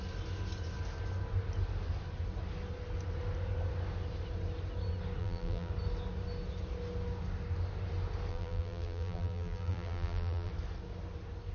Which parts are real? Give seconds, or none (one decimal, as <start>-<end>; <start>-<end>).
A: 0.0-5.2; 5.7-8.3; 10.5-11.5

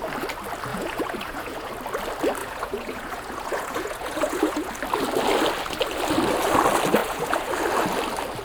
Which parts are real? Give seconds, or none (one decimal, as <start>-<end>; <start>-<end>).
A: 0.0-0.7; 1.7-2.4; 4.7-7.0; 7.5-8.4

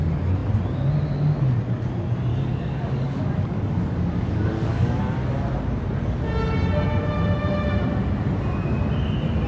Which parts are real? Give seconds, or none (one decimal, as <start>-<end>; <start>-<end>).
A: 0.0-2.3; 5.0-9.5

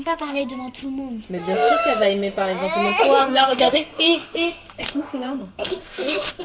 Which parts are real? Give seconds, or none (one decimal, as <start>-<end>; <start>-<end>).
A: 0.4-3.2

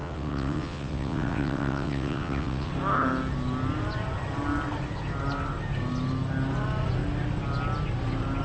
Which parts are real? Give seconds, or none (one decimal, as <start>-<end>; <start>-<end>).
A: 2.7-8.4

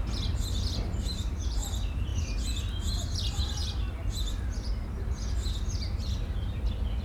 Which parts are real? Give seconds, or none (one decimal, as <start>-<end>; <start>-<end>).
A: 0.0-7.0

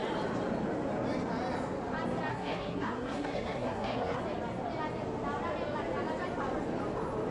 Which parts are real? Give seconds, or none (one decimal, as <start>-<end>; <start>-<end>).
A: 0.0-2.3; 4.2-7.3